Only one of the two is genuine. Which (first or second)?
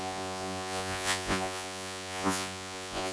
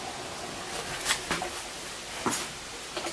second